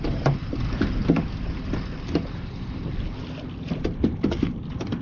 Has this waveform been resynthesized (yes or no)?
no